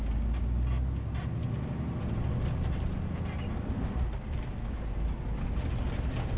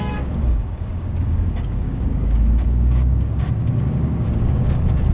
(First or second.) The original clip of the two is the first